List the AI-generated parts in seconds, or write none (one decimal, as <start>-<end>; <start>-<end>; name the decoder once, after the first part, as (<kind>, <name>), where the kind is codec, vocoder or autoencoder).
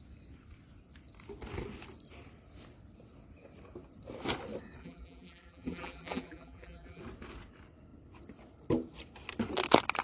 4.8-7.0 (vocoder, BigVGAN v2)